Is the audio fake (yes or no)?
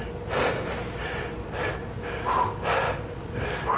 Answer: no